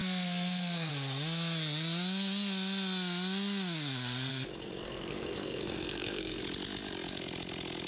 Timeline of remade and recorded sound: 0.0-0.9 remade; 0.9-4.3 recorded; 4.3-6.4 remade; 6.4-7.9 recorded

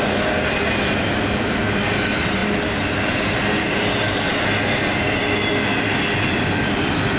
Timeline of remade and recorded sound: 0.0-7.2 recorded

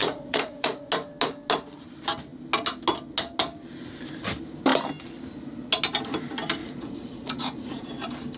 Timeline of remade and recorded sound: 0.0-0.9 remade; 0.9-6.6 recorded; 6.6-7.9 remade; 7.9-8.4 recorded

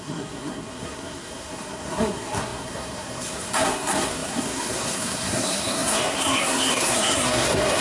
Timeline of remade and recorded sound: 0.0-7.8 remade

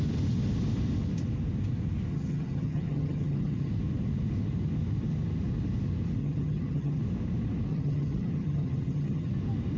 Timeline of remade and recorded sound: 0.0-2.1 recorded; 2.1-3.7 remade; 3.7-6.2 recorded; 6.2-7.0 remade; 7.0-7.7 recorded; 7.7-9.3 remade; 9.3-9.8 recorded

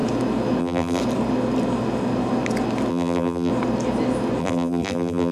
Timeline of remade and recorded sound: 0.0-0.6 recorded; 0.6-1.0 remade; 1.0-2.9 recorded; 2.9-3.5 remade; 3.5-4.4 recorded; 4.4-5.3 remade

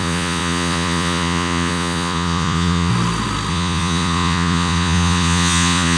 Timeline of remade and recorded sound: 0.0-2.9 remade; 2.9-3.5 recorded; 3.5-6.0 remade